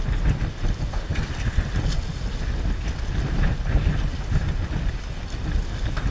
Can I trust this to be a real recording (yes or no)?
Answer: yes